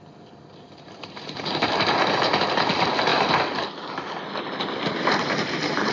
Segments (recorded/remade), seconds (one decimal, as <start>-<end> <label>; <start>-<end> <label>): 0.0-5.9 recorded